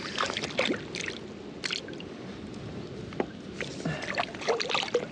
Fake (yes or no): no